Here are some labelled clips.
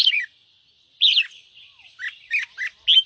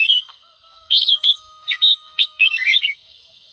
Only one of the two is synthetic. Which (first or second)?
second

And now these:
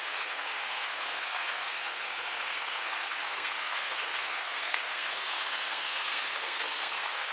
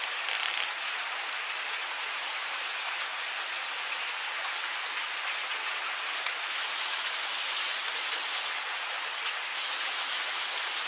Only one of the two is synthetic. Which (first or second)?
first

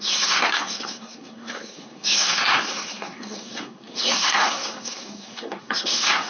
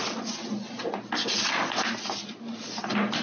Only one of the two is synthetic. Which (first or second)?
first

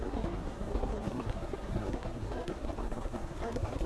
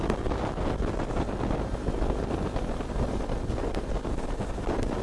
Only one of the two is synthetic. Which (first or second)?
first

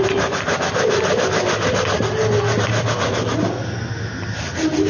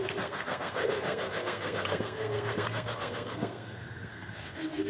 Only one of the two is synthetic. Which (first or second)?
second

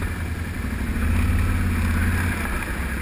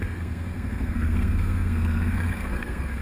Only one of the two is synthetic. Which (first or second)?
second